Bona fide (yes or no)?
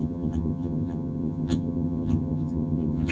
no